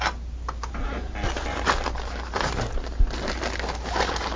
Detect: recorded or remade recorded